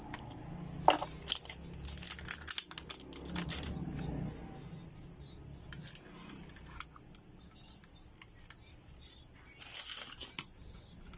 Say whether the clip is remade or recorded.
recorded